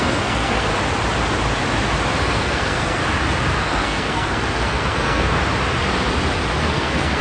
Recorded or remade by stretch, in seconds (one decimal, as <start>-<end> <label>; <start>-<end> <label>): 0.0-0.7 remade; 0.7-2.2 recorded; 2.2-3.0 remade; 3.0-3.6 recorded; 3.6-5.4 remade; 5.4-6.6 recorded; 6.6-7.2 remade